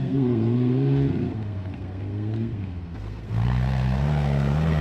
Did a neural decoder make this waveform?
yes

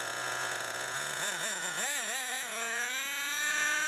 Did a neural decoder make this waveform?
yes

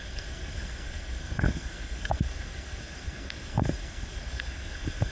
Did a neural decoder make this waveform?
yes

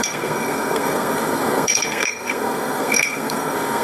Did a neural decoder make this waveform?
yes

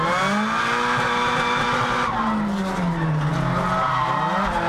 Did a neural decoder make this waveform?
no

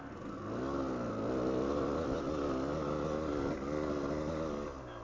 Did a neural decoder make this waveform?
no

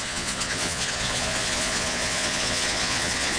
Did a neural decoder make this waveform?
yes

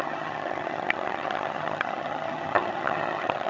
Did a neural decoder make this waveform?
yes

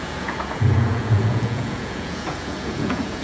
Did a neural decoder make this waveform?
yes